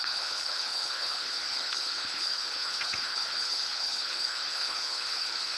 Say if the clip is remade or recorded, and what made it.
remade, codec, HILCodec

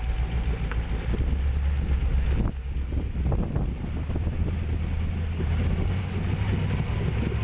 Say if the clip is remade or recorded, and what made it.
recorded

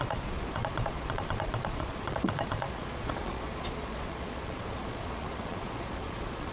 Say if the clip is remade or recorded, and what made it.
remade, vocoder, Vocos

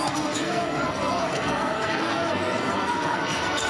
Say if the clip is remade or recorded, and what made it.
remade, codec, SNAC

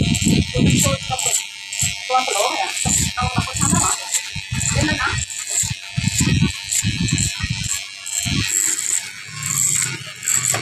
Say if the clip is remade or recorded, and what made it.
recorded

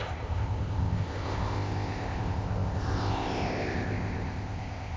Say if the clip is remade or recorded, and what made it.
remade, codec, ZipCodec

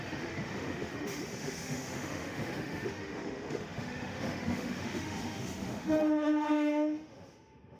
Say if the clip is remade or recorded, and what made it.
remade, autoencoder, DAC-VAE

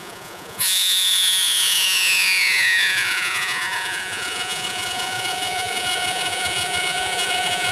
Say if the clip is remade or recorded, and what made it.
remade, vocoder, Vocos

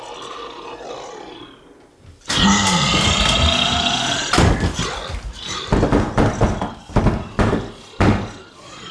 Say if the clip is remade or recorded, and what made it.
recorded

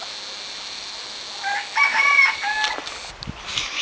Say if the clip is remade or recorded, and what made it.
recorded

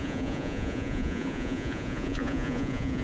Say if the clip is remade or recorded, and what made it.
remade, vocoder, Vocos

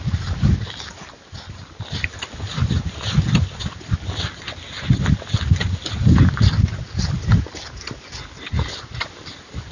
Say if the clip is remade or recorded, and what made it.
recorded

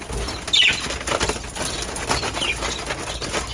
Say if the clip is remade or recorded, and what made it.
recorded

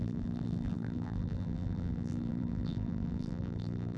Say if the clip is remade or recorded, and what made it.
remade, vocoder, BigVGAN v2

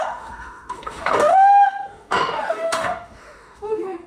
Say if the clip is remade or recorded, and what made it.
remade, autoencoder, DAC-VAE